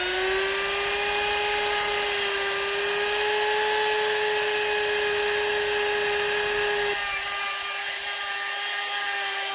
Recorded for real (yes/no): yes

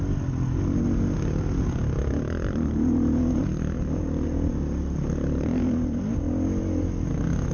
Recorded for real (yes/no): yes